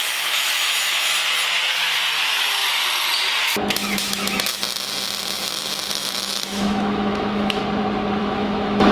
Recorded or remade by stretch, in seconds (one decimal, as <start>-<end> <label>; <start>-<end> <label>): 0.0-1.1 remade; 1.1-2.2 recorded; 2.2-2.6 remade; 2.6-3.4 recorded; 3.4-4.5 remade; 4.5-5.9 recorded; 5.9-7.6 remade; 7.6-8.2 recorded; 8.2-8.9 remade